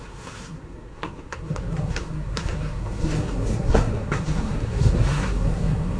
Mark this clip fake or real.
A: fake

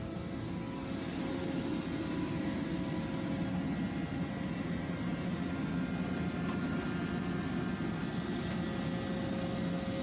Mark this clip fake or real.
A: real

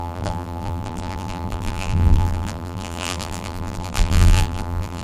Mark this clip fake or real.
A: fake